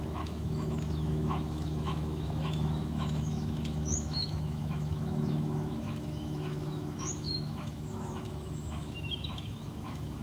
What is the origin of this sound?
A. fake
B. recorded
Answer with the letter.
A